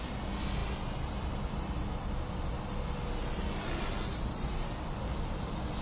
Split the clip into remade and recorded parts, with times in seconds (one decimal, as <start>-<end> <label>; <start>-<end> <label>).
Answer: 0.0-5.8 recorded